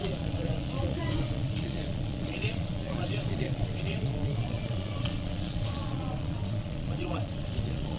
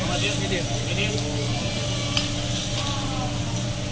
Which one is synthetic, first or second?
first